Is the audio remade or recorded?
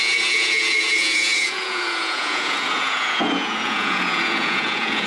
remade